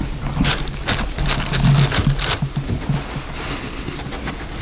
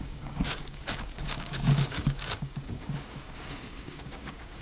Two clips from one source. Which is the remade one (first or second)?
second